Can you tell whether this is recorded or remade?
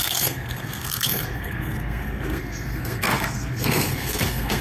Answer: remade